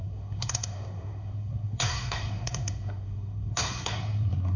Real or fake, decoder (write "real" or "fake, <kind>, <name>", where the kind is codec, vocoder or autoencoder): fake, codec, SNAC